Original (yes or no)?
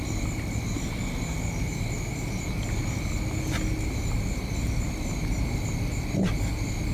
yes